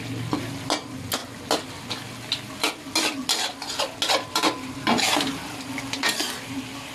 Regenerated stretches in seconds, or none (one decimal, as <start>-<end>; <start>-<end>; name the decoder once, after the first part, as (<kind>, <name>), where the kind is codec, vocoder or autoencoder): none